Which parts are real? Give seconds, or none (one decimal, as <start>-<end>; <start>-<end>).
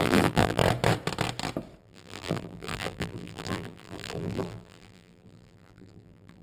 0.6-1.8